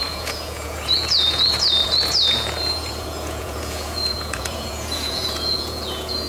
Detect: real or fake fake